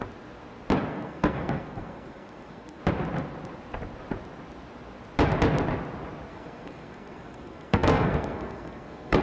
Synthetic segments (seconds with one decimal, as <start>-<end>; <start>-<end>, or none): 0.9-2.8; 6.3-9.2